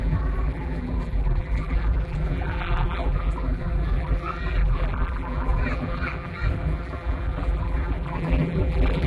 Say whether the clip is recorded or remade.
remade